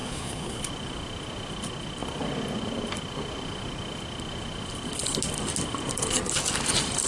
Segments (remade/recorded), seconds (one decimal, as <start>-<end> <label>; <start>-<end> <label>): 0.0-0.6 remade; 0.6-7.1 recorded